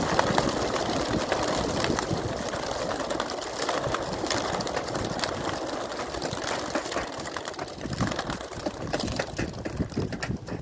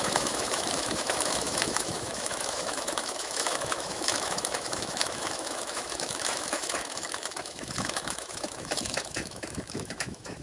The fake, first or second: second